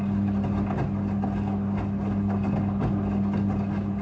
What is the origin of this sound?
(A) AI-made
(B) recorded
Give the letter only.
B